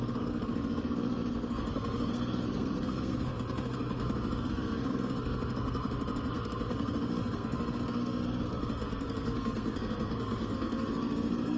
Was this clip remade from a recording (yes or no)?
yes